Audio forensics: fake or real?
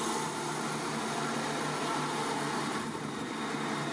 real